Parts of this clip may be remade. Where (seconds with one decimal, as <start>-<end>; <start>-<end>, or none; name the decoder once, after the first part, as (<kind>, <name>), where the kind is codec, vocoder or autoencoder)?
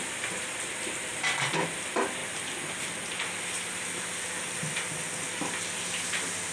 none